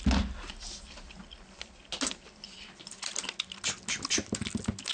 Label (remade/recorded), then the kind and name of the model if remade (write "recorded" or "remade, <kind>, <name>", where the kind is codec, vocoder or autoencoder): recorded